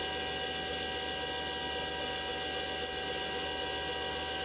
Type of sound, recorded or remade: recorded